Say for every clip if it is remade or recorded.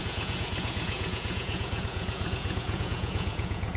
remade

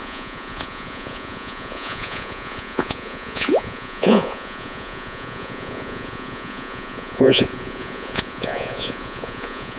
remade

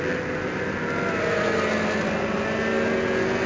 recorded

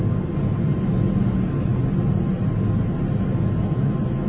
recorded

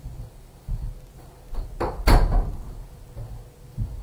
recorded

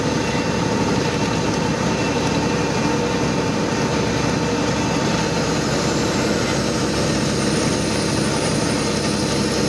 recorded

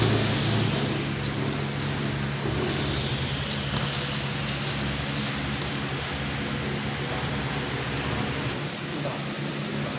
recorded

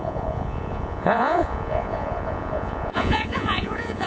remade